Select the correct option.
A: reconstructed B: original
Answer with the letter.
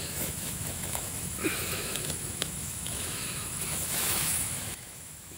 A